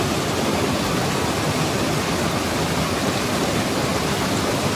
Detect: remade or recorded recorded